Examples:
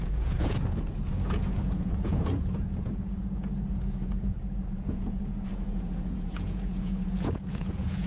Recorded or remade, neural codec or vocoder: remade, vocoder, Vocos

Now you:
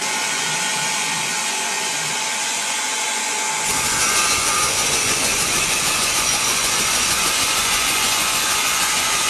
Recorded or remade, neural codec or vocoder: remade, vocoder, Vocos